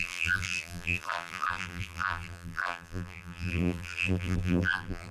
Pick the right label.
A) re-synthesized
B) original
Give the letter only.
A